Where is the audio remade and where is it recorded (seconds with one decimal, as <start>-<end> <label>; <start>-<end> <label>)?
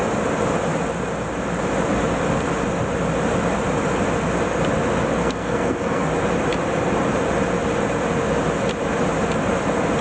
0.0-5.2 recorded; 5.2-6.1 remade; 6.1-10.0 recorded